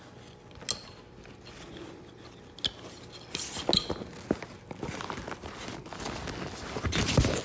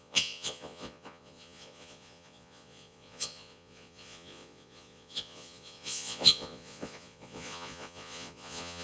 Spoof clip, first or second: second